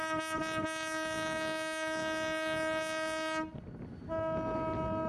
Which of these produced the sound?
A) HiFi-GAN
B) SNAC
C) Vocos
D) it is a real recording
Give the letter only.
D